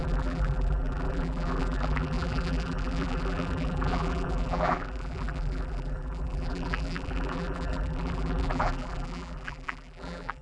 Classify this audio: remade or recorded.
remade